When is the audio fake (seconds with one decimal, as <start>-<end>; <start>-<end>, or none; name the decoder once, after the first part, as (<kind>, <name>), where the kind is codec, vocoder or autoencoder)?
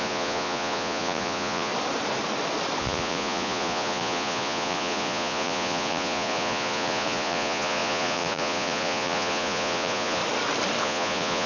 0.0-1.7 (vocoder, Vocos); 2.8-10.2; 10.8-11.5